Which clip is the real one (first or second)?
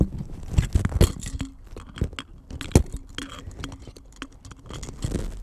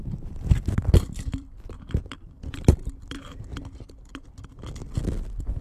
first